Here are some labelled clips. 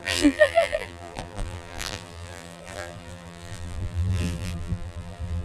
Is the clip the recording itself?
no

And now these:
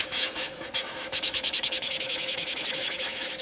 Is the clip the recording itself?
no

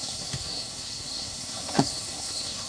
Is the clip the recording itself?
no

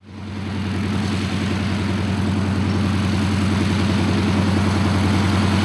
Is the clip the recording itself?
yes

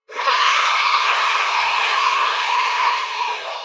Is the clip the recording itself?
no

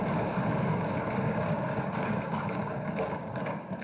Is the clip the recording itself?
no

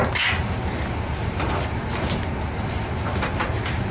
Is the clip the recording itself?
yes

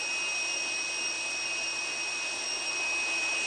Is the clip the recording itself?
yes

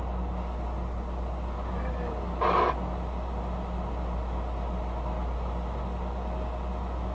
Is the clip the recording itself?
yes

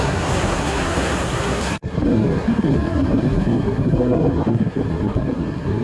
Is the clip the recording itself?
no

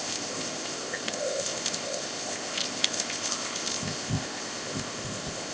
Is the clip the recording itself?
no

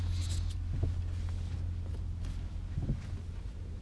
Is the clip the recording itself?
yes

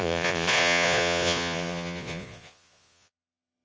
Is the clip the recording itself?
no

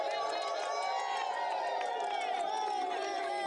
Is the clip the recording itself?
yes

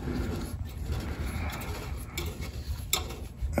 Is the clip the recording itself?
yes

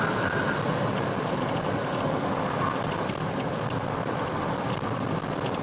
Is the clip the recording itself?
yes